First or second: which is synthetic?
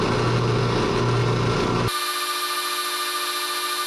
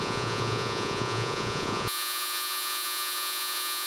second